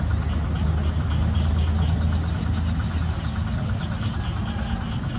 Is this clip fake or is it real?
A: real